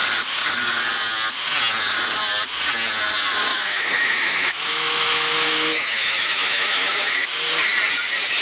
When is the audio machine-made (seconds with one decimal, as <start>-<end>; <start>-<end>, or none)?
3.5-7.1

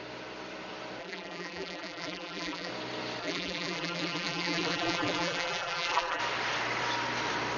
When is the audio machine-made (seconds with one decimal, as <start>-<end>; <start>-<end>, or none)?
1.0-2.7; 3.2-6.2

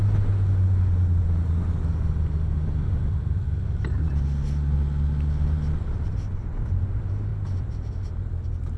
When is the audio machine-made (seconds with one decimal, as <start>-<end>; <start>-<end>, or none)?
7.3-7.9